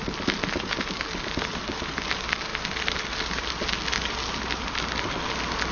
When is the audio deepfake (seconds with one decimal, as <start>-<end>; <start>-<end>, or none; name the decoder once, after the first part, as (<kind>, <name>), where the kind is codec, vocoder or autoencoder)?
none